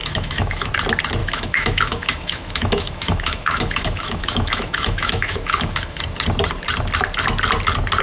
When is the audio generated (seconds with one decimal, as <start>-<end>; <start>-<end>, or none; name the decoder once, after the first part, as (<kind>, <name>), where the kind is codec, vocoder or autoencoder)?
0.0-0.7 (autoencoder, DAC-VAE); 1.2-6.0